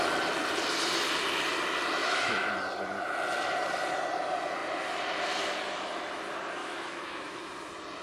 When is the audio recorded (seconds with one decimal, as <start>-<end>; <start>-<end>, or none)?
0.0-2.0; 2.5-6.6; 7.4-8.0